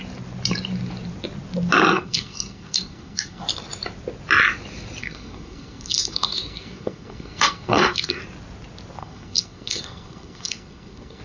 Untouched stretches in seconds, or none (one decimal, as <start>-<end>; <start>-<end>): 0.0-1.9; 3.4-5.0; 8.2-9.0